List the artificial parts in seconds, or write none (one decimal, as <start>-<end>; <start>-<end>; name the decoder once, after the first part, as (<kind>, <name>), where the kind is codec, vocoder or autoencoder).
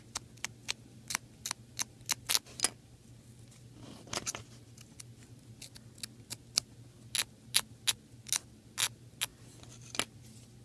none